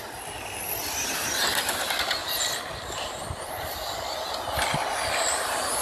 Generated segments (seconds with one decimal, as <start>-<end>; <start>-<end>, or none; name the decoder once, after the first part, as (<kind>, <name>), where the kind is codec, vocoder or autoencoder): 0.8-1.6 (vocoder, BigVGAN v2); 2.2-4.1